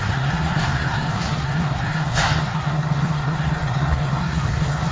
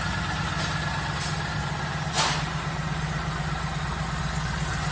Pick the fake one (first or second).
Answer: first